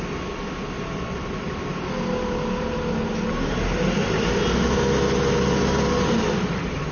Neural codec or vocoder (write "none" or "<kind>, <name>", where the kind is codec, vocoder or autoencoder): none